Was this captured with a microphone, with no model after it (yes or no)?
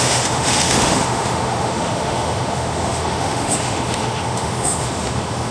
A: no